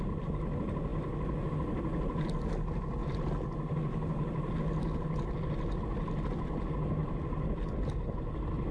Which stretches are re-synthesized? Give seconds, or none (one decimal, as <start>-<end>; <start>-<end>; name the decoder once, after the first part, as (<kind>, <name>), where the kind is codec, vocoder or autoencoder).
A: 7.0-7.7 (vocoder, BigVGAN v2)